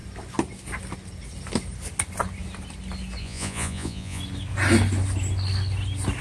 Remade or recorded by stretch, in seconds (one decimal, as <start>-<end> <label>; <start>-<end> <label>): 0.0-3.2 recorded; 3.2-4.2 remade; 4.2-6.2 recorded